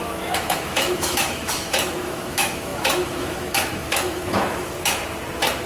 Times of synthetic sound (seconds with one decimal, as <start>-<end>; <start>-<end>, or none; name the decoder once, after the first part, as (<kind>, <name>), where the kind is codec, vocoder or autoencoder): 0.0-5.0 (autoencoder, DAC-VAE)